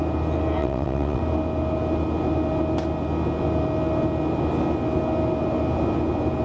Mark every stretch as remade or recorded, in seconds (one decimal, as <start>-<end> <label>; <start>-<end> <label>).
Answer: 0.0-0.6 recorded; 0.6-1.2 remade; 1.2-6.4 recorded